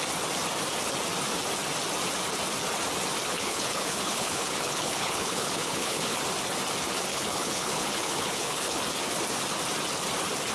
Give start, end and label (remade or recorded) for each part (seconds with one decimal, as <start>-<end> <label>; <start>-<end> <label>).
0.0-3.3 recorded; 3.3-6.2 remade; 6.2-7.1 recorded; 7.1-8.8 remade; 8.8-10.5 recorded